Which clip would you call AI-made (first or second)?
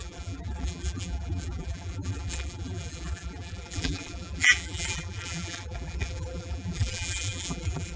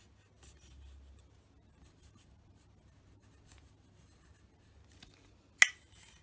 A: first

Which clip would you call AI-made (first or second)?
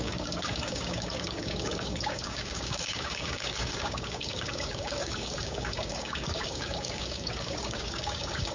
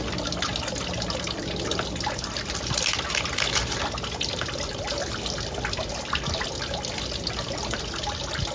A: first